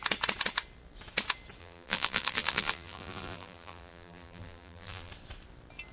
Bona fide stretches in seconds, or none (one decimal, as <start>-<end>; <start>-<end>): 0.0-1.6; 5.1-5.9